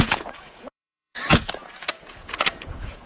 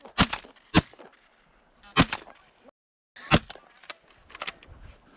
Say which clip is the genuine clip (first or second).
second